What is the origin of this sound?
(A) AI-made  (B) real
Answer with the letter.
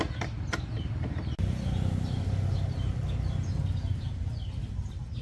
B